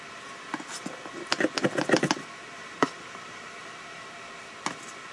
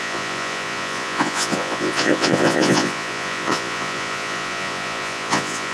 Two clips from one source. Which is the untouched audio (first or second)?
first